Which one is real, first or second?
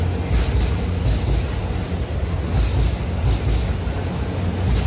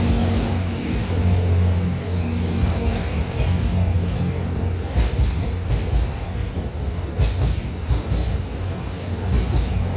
first